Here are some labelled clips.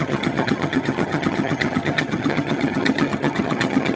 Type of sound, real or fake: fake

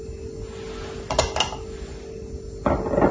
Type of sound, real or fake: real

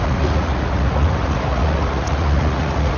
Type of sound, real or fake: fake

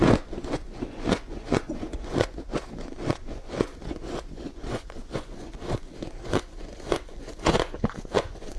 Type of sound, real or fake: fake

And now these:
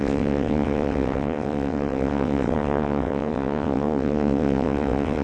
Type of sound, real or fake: fake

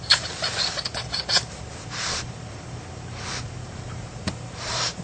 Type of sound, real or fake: fake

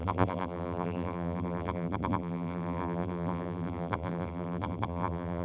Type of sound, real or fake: fake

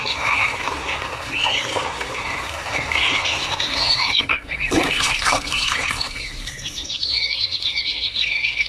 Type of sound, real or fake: fake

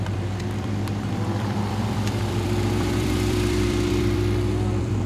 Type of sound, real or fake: fake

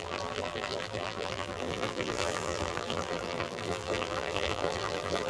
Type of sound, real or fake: fake